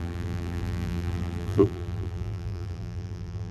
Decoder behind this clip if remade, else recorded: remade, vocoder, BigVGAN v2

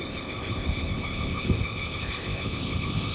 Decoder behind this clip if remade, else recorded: remade, codec, ZipCodec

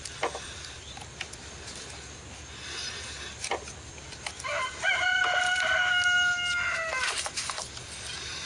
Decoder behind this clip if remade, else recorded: recorded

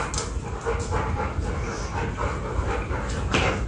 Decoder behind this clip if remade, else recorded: recorded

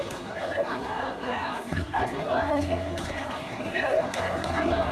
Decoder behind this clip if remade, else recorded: remade, codec, SNAC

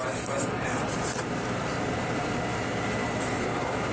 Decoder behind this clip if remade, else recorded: remade, vocoder, BigVGAN v2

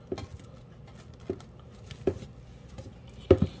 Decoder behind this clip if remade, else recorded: recorded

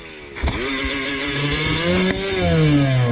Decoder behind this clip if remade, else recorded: recorded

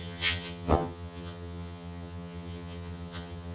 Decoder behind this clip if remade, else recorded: remade, vocoder, HiFi-GAN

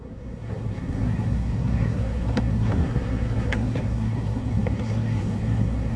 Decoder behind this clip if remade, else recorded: remade, codec, SNAC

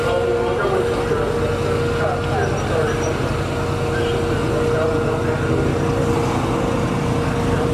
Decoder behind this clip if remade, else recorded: recorded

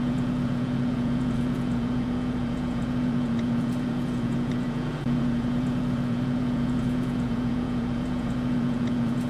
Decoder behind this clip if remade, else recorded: remade, vocoder, Vocos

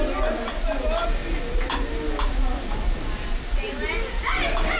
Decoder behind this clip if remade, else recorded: recorded